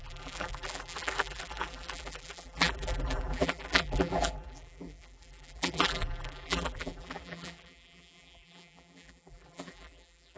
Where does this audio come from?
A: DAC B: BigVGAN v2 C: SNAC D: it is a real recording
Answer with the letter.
B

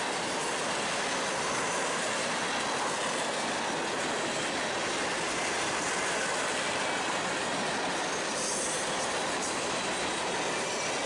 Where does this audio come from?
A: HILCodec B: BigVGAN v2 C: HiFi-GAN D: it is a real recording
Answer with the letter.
D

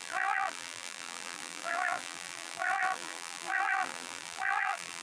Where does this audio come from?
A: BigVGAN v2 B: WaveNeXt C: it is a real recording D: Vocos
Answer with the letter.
A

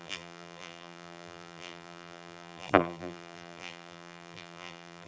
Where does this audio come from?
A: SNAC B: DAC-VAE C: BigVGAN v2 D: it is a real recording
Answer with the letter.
C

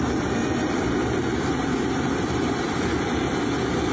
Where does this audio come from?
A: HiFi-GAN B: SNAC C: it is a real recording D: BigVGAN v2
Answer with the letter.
D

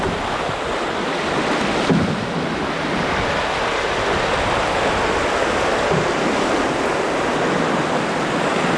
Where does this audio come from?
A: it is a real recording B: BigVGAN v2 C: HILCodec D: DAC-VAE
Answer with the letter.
A